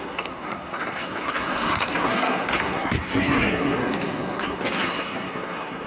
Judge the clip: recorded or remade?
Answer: remade